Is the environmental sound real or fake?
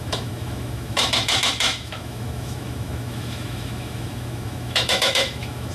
fake